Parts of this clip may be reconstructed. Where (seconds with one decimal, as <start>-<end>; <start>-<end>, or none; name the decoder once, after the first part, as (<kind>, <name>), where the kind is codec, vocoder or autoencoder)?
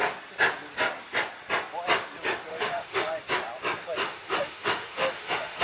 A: 2.5-3.1 (autoencoder, DAC-VAE); 4.0-5.6